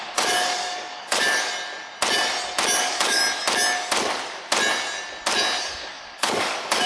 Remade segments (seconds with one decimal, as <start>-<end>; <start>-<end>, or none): 0.0-1.5; 2.8-3.2; 5.6-6.9